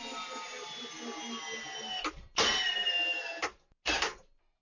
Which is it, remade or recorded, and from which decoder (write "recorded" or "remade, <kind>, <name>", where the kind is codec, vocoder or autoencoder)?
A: recorded